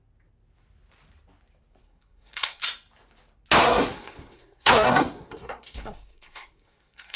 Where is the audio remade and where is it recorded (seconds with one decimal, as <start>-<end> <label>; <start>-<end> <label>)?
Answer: 0.0-1.8 recorded; 1.8-2.6 remade; 2.6-3.6 recorded; 3.6-7.2 remade